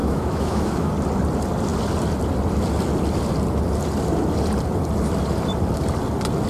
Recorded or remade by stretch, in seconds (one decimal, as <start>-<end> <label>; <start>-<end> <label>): 0.0-0.9 remade; 0.9-6.5 recorded

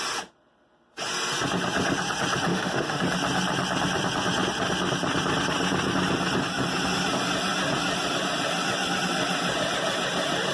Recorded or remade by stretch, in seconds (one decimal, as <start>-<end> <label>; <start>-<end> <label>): 0.0-2.5 recorded; 2.5-3.0 remade; 3.0-10.5 recorded

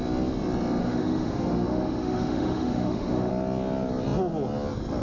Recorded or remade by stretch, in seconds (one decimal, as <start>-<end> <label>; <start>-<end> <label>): 0.0-0.8 recorded; 0.8-3.3 remade; 3.3-5.0 recorded

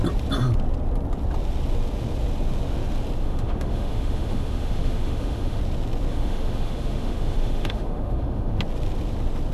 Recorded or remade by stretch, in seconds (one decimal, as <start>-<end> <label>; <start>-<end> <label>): 0.0-3.2 recorded; 3.2-5.6 remade; 5.6-6.1 recorded; 6.1-8.6 remade; 8.6-9.5 recorded

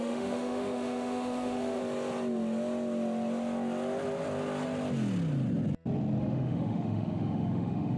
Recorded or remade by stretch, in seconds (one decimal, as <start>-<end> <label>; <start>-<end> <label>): 0.0-1.8 remade; 1.8-6.2 recorded; 6.2-8.0 remade